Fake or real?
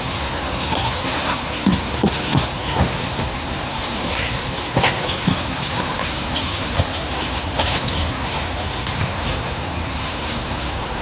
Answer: fake